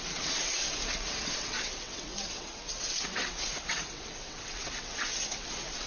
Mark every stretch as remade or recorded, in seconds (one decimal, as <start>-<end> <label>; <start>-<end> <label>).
0.0-5.9 remade